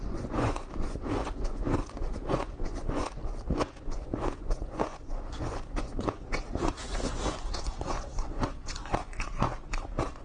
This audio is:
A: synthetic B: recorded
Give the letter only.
A